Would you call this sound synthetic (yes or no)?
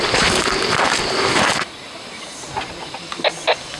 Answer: no